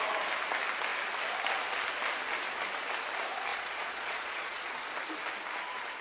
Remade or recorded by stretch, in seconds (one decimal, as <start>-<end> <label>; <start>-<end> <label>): 0.0-3.5 recorded; 3.5-4.7 remade; 4.7-6.0 recorded